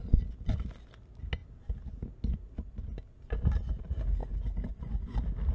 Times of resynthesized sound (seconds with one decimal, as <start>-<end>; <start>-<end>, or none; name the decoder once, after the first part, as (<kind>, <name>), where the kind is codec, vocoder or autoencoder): none